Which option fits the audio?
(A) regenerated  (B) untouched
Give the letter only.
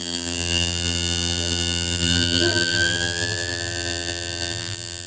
A